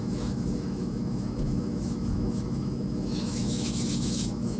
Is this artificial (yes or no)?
yes